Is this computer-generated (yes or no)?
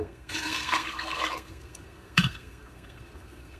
yes